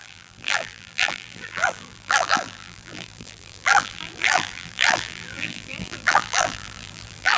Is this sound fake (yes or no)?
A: yes